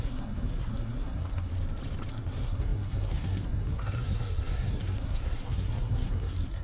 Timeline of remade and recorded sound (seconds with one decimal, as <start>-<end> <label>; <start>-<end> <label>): 0.0-1.5 remade; 1.5-2.1 recorded; 2.1-6.6 remade